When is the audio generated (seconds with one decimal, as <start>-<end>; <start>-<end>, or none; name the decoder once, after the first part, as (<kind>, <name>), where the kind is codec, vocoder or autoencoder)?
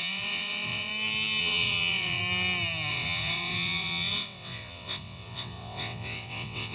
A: 0.0-0.9 (vocoder, WaveNeXt); 1.4-2.2; 2.9-6.7